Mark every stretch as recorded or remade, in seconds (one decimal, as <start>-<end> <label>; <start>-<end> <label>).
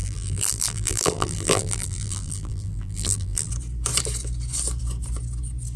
0.0-3.5 remade; 3.5-5.8 recorded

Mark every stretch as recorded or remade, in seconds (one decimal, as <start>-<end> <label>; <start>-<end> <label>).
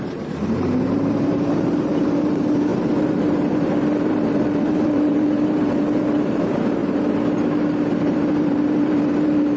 0.0-6.8 remade; 6.8-8.0 recorded; 8.0-9.6 remade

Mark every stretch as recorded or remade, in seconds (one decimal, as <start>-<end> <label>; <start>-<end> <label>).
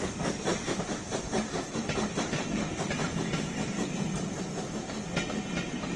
0.0-0.5 recorded; 0.5-4.1 remade; 4.1-6.0 recorded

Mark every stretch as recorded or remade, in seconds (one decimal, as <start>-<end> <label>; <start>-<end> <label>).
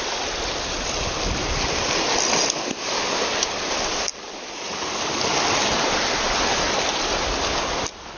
0.0-4.1 recorded; 4.1-6.0 remade; 6.0-8.2 recorded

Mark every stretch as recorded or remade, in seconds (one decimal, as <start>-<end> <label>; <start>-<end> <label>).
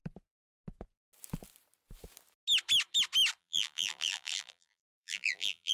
0.0-3.4 recorded; 3.4-5.7 remade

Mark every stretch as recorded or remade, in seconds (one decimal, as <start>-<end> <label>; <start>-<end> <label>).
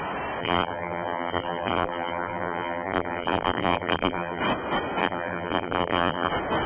0.0-0.4 recorded; 0.4-4.4 remade; 4.4-5.0 recorded; 5.0-6.3 remade; 6.3-6.7 recorded